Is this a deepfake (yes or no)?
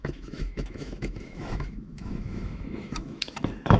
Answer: yes